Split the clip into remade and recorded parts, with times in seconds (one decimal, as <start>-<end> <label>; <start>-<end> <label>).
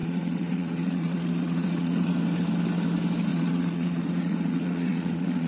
0.0-2.2 remade; 2.2-3.3 recorded; 3.3-5.5 remade